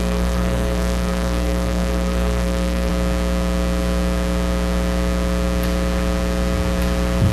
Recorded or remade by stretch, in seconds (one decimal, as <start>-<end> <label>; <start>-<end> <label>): 0.0-2.9 remade; 2.9-7.3 recorded